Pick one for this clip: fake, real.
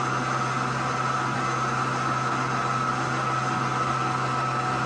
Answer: real